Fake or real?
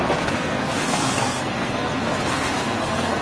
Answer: fake